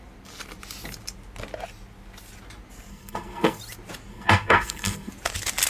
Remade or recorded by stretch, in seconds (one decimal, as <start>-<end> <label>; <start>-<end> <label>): 0.0-2.9 recorded; 2.9-3.6 remade; 3.6-4.1 recorded; 4.1-5.1 remade; 5.1-5.7 recorded